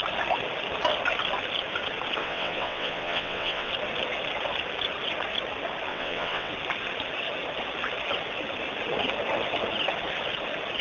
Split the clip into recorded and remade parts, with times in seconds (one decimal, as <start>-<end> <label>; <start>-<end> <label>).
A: 0.0-2.2 recorded; 2.2-3.7 remade; 3.7-5.9 recorded; 5.9-6.5 remade; 6.5-10.8 recorded